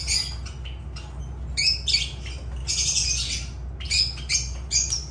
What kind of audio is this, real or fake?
real